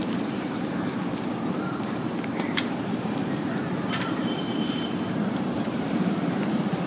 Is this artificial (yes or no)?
yes